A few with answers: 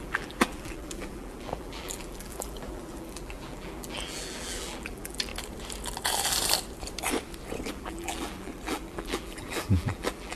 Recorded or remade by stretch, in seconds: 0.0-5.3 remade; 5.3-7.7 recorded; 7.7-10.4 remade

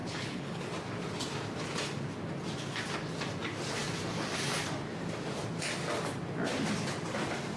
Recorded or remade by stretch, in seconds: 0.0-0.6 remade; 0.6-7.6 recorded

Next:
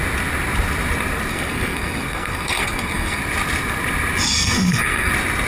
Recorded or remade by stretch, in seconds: 0.0-1.3 recorded; 1.3-3.2 remade; 3.2-4.3 recorded; 4.3-5.1 remade; 5.1-5.5 recorded

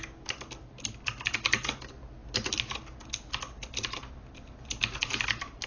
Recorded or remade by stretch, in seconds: 0.0-5.7 recorded

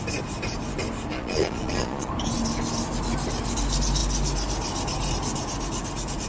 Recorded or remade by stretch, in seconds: 0.0-1.1 recorded; 1.1-2.1 remade; 2.1-6.3 recorded

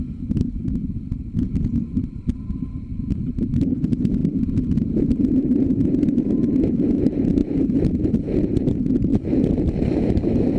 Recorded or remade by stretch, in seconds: 0.0-10.6 remade

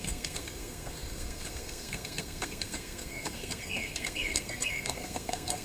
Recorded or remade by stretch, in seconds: 0.0-5.6 remade

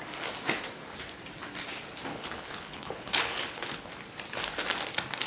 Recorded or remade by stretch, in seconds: 0.0-2.1 recorded; 2.1-3.9 remade; 3.9-5.3 recorded